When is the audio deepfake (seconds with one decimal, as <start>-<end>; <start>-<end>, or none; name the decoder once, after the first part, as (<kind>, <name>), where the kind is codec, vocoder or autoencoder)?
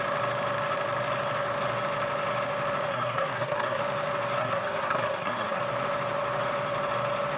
2.9-3.8 (codec, SNAC); 4.4-5.6